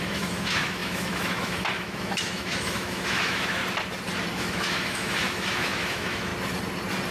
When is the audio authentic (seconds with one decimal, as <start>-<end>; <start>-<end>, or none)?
3.6-4.3; 6.3-7.1